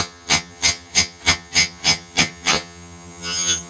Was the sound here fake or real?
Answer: fake